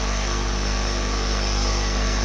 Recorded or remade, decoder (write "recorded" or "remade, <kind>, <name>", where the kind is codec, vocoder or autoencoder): remade, codec, SNAC